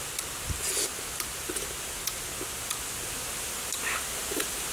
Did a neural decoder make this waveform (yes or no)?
no